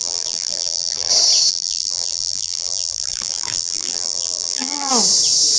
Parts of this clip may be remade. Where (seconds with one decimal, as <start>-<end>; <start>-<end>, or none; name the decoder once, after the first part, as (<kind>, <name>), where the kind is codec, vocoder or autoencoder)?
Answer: 0.0-1.1 (vocoder, BigVGAN v2); 1.5-4.9